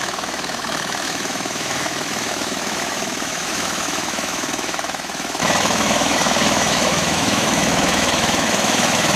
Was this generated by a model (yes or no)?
yes